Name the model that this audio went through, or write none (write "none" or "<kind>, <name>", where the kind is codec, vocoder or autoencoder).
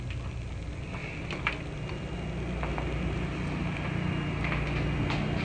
none